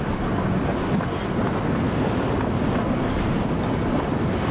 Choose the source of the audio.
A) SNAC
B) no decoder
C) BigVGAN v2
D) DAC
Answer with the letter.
B